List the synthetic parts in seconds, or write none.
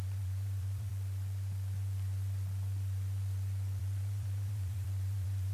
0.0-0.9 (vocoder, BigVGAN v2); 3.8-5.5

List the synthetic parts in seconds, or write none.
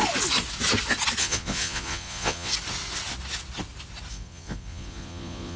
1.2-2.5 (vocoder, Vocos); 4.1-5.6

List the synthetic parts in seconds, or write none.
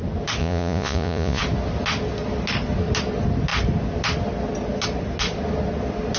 0.4-1.4 (vocoder, Vocos)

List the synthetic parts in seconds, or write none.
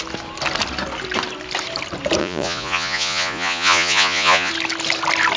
2.2-4.5 (vocoder, Vocos)